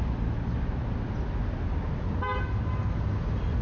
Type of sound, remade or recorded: recorded